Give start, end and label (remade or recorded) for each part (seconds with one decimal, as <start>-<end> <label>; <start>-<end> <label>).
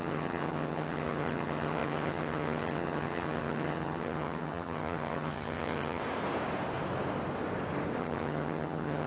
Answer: 0.0-6.0 remade; 6.0-8.0 recorded; 8.0-9.1 remade